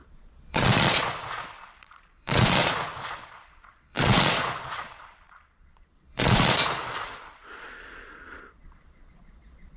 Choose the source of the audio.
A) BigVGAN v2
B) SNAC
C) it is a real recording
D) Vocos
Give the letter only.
D